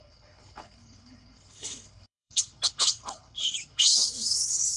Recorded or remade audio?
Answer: remade